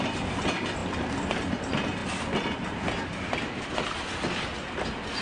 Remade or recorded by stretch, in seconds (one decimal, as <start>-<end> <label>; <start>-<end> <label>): 0.0-5.2 recorded